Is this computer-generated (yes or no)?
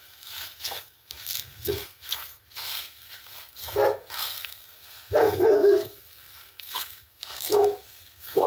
yes